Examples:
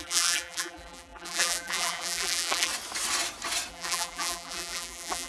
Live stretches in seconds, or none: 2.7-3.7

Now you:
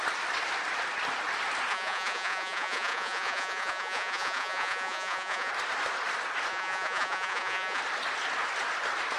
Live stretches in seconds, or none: 0.0-1.7; 5.5-6.5; 7.8-9.2

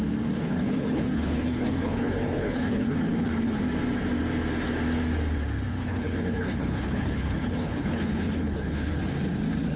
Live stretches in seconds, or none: 0.0-0.4; 3.6-5.7; 9.0-9.8

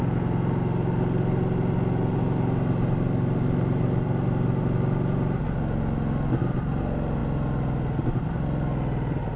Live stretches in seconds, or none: 0.0-9.4

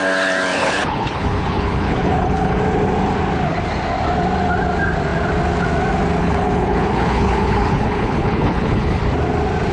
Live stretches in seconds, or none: 0.0-0.6; 2.6-6.2; 9.0-9.7

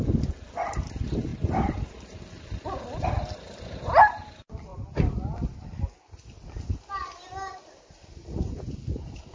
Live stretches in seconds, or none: 0.0-9.3